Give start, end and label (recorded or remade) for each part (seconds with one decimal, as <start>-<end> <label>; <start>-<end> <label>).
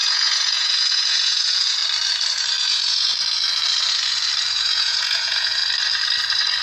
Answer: 0.0-1.8 remade; 1.8-2.6 recorded; 2.6-3.1 remade; 3.1-4.5 recorded; 4.5-5.6 remade; 5.6-6.6 recorded